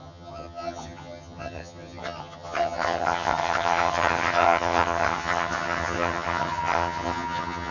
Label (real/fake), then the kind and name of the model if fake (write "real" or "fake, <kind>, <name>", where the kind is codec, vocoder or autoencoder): fake, vocoder, HiFi-GAN